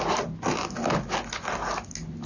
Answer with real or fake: real